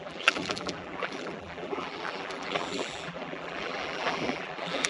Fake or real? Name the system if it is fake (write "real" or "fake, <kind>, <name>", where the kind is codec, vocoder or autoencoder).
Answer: fake, vocoder, BigVGAN v2